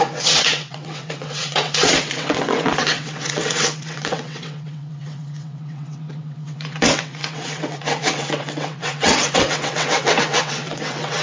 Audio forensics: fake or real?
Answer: fake